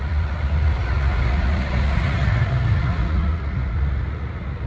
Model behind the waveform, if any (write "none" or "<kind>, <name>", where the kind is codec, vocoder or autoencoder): vocoder, Vocos